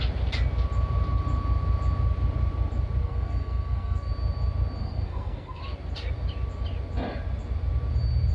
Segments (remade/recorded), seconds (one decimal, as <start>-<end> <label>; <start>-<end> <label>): 0.0-3.0 recorded; 3.0-4.1 remade; 4.1-4.8 recorded; 4.8-5.6 remade; 5.6-8.3 recorded